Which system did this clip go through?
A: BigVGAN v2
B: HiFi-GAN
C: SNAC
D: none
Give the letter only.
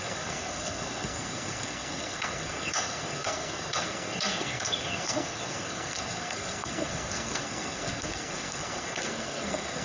C